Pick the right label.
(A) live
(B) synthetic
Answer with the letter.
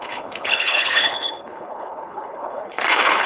B